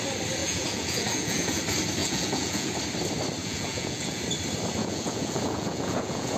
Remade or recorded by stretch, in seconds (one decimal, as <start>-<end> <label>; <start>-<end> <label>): 0.0-0.4 recorded; 0.4-1.6 remade; 1.6-2.0 recorded; 2.0-2.8 remade; 2.8-3.4 recorded; 3.4-4.2 remade; 4.2-4.8 recorded; 4.8-6.4 remade